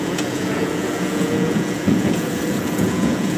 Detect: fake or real fake